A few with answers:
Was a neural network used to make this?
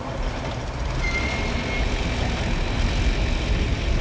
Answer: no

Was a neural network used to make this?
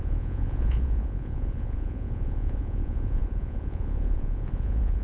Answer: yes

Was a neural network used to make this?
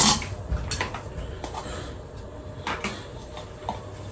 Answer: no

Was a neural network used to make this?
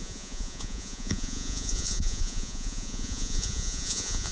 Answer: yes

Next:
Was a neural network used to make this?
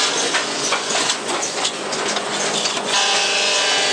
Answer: yes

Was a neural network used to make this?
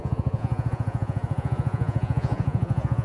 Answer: yes